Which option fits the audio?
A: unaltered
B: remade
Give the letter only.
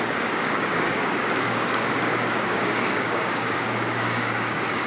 B